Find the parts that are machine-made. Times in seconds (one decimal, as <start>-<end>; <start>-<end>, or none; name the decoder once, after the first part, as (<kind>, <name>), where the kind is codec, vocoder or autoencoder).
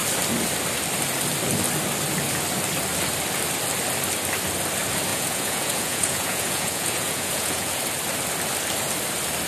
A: 5.1-7.8 (vocoder, Vocos)